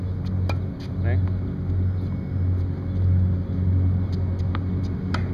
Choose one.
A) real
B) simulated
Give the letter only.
A